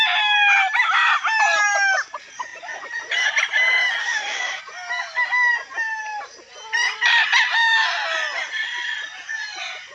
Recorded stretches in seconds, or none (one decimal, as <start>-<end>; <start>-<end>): 0.0-4.0; 4.6-9.9